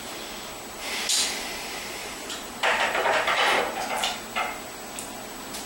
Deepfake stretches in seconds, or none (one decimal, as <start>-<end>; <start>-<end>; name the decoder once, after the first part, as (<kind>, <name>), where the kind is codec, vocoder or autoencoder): 2.0-3.6 (vocoder, BigVGAN v2)